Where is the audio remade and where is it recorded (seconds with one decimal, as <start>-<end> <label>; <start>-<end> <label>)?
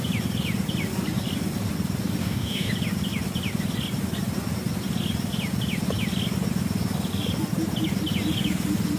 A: 0.0-2.2 recorded; 2.2-2.7 remade; 2.7-9.0 recorded